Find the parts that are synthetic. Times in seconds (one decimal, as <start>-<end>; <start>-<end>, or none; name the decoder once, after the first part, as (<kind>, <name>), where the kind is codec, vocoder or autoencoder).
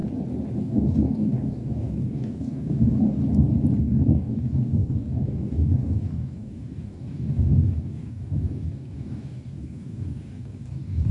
0.6-3.2 (codec, DAC); 3.8-11.1